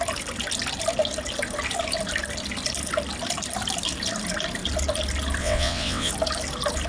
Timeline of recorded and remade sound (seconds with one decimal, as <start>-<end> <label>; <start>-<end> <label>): 0.0-5.4 recorded; 5.4-6.1 remade; 6.1-6.9 recorded